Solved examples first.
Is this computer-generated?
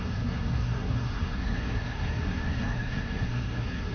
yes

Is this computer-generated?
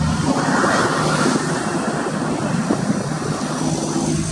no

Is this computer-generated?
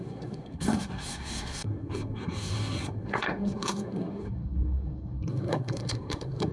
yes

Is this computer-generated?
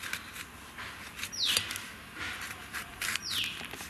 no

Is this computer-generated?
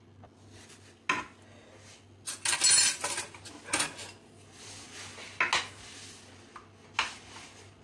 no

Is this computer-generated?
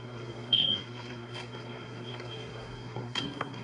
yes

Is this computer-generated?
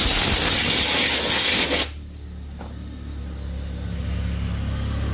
no